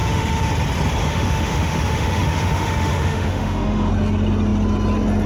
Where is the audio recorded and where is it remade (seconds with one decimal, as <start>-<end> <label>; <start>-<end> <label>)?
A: 0.0-0.5 remade; 0.5-1.0 recorded; 1.0-3.9 remade; 3.9-5.3 recorded